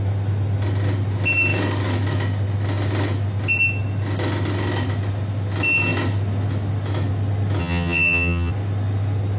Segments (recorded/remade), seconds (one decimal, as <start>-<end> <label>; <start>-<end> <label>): 0.0-7.6 recorded; 7.6-8.5 remade; 8.5-9.4 recorded